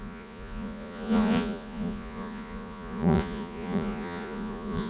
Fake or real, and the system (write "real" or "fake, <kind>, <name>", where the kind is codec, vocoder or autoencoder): fake, vocoder, Vocos